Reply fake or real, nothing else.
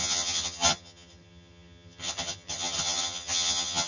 fake